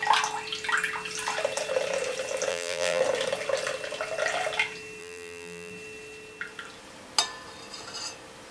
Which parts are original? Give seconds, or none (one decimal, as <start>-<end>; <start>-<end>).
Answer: 0.0-2.5; 3.0-5.0; 5.7-8.5